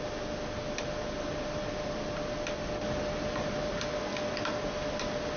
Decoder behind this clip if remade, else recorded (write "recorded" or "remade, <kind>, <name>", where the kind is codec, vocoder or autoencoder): recorded